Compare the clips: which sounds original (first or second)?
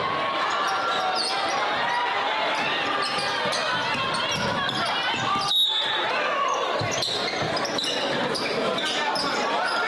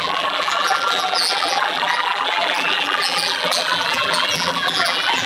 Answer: first